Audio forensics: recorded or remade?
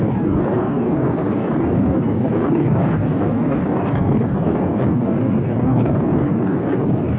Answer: remade